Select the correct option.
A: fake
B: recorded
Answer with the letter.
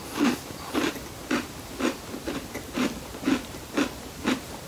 A